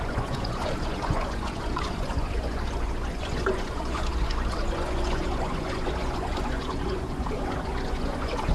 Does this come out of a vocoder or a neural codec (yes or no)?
yes